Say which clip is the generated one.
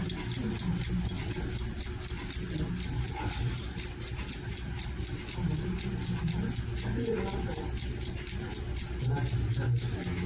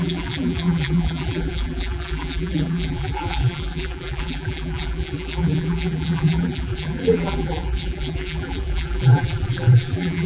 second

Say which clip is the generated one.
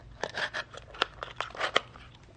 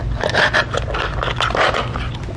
first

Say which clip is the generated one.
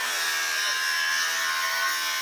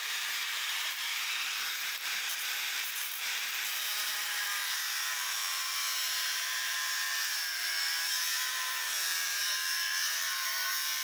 second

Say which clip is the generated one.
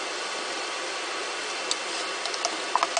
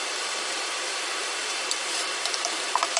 second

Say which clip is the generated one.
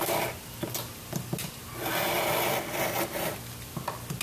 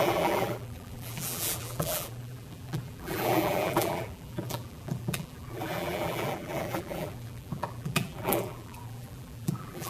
second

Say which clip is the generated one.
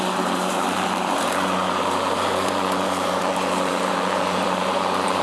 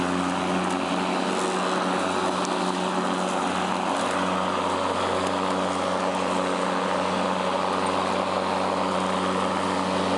first